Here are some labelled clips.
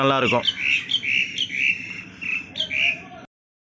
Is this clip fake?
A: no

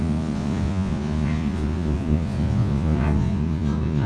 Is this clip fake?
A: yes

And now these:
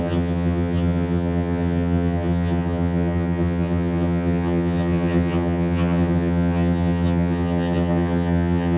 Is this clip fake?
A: yes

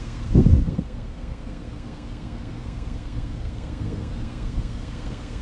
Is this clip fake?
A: yes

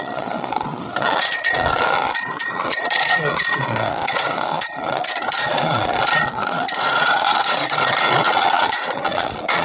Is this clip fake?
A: yes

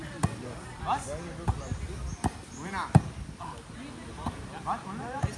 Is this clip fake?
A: no